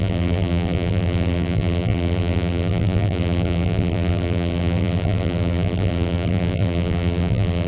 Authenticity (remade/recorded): remade